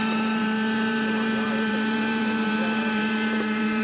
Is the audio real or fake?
fake